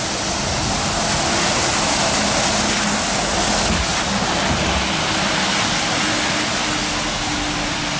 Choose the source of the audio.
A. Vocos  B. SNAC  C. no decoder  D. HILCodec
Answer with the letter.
C